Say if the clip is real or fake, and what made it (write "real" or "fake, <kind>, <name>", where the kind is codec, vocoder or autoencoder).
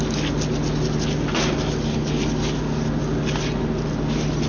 real